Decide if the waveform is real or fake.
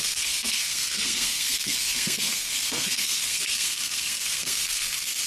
fake